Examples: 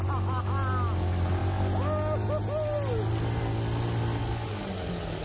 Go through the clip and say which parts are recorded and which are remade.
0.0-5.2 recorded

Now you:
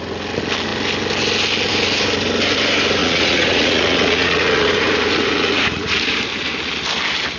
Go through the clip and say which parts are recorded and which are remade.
0.0-3.0 recorded; 3.0-6.0 remade; 6.0-7.4 recorded

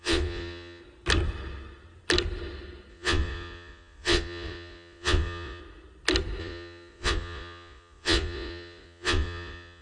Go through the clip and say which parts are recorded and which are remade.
0.0-0.8 remade; 0.8-2.9 recorded; 2.9-5.6 remade; 5.6-6.4 recorded; 6.4-9.8 remade

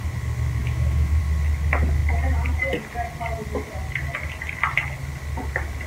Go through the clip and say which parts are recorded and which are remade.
0.0-0.6 recorded; 0.6-1.2 remade; 1.2-5.9 recorded

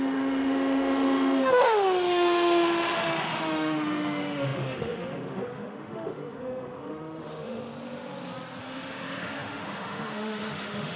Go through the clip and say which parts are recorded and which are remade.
0.0-7.6 remade; 7.6-8.6 recorded; 8.6-11.0 remade

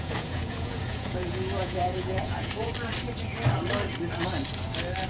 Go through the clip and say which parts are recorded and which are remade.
0.0-2.7 remade; 2.7-5.1 recorded

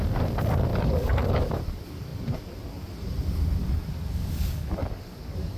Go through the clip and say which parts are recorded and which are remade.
0.0-0.7 recorded; 0.7-1.6 remade; 1.6-3.6 recorded; 3.6-5.6 remade

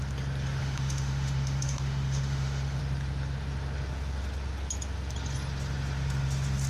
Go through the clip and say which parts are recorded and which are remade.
0.0-0.6 recorded; 0.6-2.8 remade; 2.8-6.7 recorded